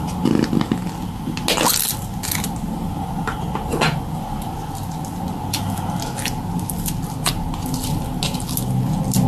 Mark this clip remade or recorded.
recorded